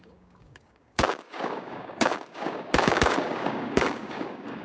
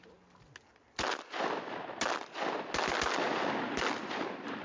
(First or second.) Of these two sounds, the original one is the second